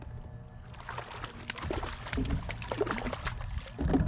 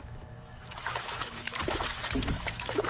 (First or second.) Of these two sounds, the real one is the first